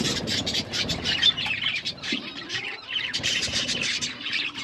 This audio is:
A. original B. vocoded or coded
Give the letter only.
B